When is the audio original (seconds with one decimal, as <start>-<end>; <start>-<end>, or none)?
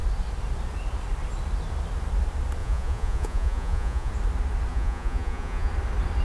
0.0-2.6; 4.1-4.7; 5.7-6.2